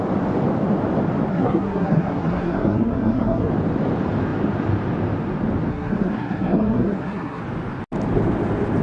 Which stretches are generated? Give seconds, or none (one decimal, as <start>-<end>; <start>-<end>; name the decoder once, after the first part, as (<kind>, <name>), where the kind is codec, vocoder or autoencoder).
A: 1.3-3.5 (codec, SNAC); 5.7-7.4